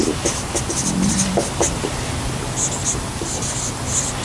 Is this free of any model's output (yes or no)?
yes